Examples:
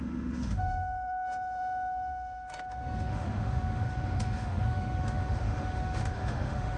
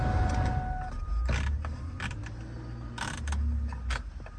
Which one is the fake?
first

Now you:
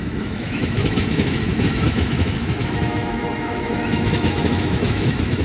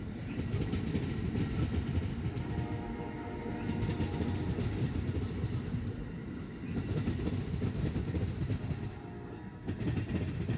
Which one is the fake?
first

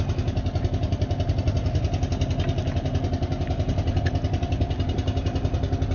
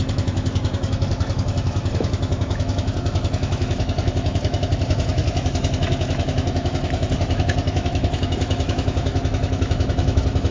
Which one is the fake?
second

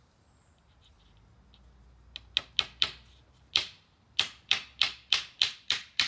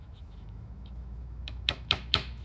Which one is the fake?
second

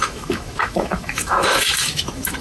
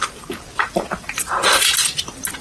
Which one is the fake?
first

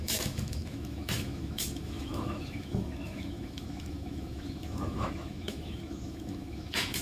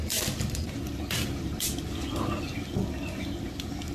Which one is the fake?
first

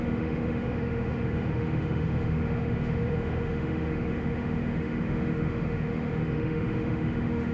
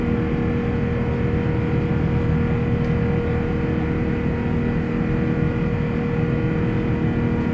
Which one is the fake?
first